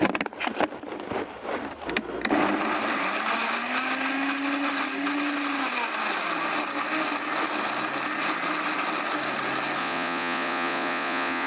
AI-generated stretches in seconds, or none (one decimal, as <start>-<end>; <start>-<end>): 9.8-11.5